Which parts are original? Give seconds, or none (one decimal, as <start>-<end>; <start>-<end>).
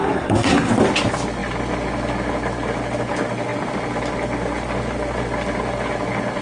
0.7-6.4